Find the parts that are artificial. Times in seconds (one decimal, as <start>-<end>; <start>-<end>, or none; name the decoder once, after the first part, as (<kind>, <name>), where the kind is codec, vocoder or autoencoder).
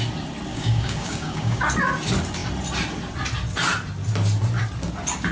0.5-1.6 (codec, DAC)